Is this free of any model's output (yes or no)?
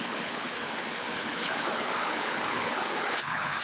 no